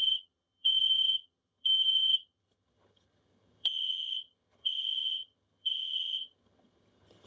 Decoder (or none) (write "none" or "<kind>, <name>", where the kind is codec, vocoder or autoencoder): vocoder, HiFi-GAN